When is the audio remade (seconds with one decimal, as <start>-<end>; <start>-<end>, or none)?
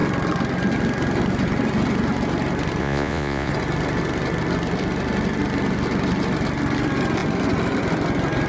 2.8-3.5